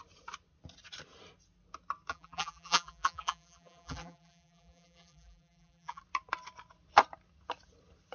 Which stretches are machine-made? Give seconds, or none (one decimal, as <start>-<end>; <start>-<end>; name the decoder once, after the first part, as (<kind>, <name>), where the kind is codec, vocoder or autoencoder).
2.1-6.0 (vocoder, BigVGAN v2)